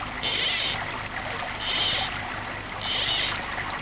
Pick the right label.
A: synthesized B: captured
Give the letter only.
B